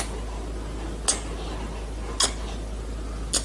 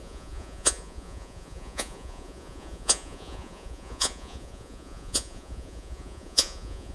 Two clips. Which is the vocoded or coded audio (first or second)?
second